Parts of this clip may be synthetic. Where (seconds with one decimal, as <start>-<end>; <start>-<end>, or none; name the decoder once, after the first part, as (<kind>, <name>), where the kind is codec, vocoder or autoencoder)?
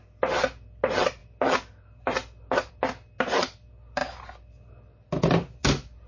none